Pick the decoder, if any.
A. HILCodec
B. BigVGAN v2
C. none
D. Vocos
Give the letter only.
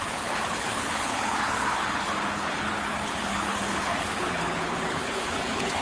A